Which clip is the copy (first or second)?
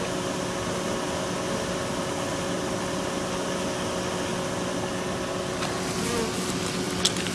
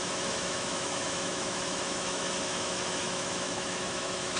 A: second